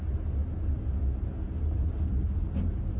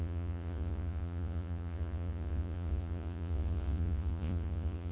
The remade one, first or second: second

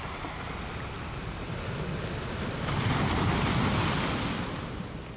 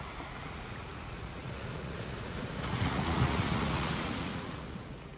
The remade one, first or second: second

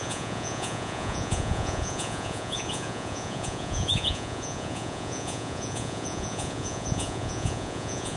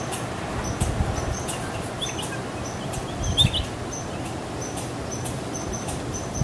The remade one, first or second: first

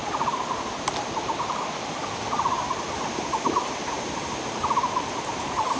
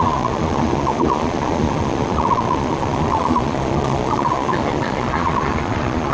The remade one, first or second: second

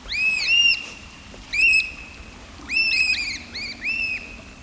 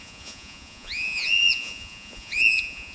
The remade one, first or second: second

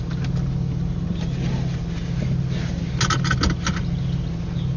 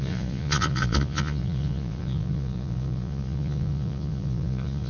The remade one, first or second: second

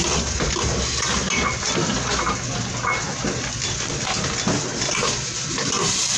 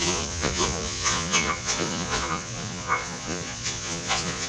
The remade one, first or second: second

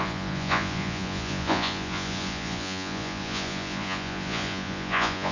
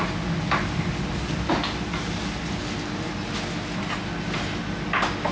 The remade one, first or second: first